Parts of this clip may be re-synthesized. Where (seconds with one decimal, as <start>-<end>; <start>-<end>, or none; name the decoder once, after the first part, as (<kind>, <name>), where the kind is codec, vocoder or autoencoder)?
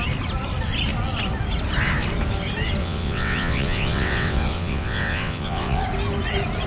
2.8-5.8 (vocoder, WaveNeXt)